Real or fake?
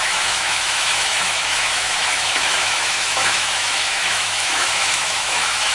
fake